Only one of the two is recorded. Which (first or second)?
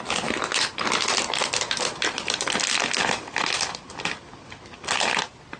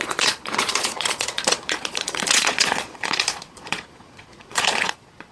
first